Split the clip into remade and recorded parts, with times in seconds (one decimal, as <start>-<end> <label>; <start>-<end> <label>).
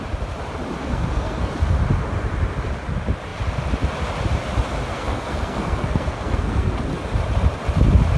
0.0-0.8 recorded; 0.8-1.5 remade; 1.5-4.9 recorded; 4.9-6.7 remade; 6.7-8.2 recorded